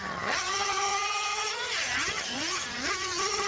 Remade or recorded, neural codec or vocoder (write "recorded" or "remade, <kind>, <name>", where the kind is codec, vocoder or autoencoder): remade, vocoder, HiFi-GAN